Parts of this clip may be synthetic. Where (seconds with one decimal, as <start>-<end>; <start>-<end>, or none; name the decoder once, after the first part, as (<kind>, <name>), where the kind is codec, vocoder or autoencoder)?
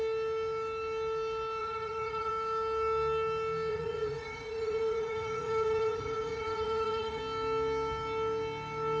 1.6-2.3 (vocoder, Vocos); 3.7-7.2